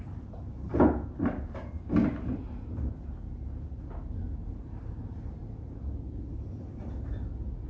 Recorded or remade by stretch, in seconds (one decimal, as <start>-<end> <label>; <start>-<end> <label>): 0.0-7.7 recorded